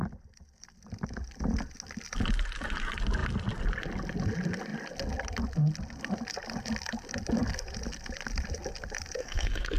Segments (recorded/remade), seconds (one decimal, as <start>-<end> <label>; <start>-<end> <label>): 0.0-9.2 recorded; 9.2-9.8 remade